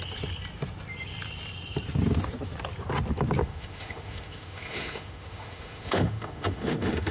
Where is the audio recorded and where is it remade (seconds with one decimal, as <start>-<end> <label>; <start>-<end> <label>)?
0.0-3.4 recorded; 3.4-7.1 remade